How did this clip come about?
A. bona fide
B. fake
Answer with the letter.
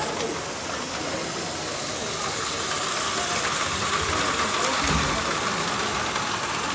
A